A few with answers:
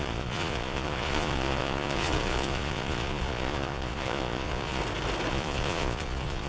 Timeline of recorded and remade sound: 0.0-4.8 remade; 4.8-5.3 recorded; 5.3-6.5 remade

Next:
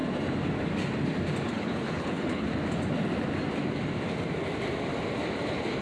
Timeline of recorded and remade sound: 0.0-1.5 recorded; 1.5-2.5 remade; 2.5-5.8 recorded

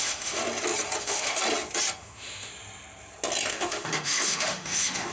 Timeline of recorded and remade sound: 0.0-0.4 remade; 0.4-1.0 recorded; 1.0-1.4 remade; 1.4-2.0 recorded; 2.0-2.5 remade; 2.5-3.5 recorded; 3.5-5.1 remade